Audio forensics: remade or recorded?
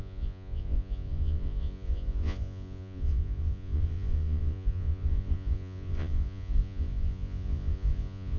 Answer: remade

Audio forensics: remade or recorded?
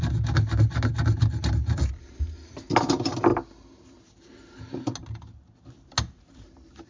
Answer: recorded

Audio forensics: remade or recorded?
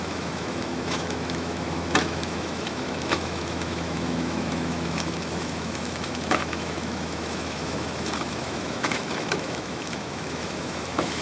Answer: remade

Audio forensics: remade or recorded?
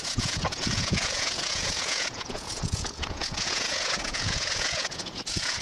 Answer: remade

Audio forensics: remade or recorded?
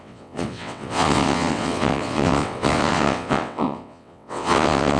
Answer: remade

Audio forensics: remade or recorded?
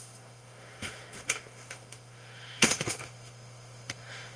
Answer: remade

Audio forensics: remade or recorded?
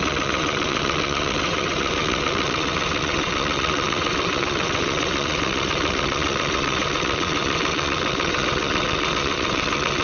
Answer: remade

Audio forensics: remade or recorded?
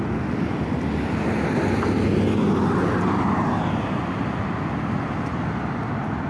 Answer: recorded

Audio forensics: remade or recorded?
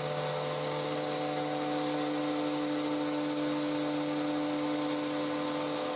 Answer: recorded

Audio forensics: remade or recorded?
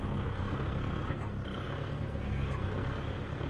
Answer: remade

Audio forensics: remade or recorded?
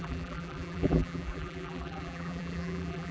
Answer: remade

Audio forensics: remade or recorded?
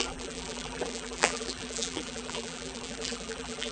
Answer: remade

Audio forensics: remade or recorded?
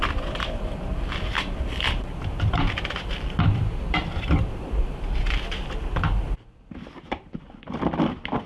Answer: remade